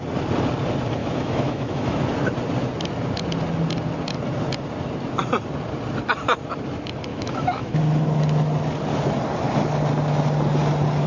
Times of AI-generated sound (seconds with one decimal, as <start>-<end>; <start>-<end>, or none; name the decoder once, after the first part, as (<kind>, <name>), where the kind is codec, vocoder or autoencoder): 1.0-2.0 (autoencoder, DAC-VAE); 7.1-7.8